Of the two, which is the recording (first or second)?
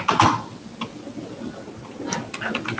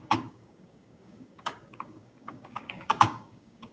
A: first